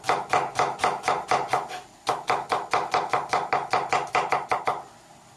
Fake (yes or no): no